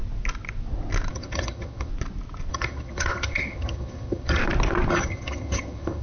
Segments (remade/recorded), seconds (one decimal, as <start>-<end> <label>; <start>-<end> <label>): 0.0-1.1 recorded; 1.1-1.9 remade; 1.9-2.5 recorded; 2.5-4.4 remade; 4.4-4.9 recorded; 4.9-6.0 remade